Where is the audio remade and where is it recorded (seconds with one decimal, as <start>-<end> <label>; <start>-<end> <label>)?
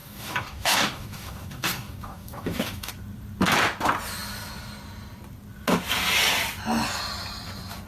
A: 0.0-2.9 remade; 2.9-7.9 recorded